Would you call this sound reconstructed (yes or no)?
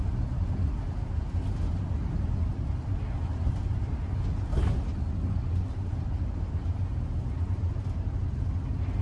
no